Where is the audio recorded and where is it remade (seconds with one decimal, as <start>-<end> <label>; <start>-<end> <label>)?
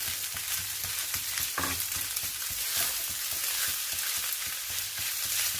0.0-5.6 recorded